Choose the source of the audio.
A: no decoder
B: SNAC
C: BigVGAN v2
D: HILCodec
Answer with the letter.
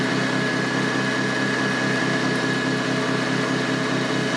A